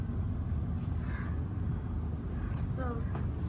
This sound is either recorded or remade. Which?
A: recorded